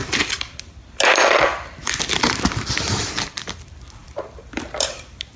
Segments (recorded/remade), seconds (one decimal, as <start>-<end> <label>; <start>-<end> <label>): 0.0-5.4 remade